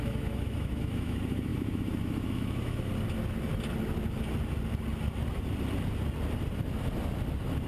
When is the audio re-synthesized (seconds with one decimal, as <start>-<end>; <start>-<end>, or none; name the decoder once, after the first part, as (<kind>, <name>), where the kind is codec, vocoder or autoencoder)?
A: 0.0-2.9 (autoencoder, DAC-VAE)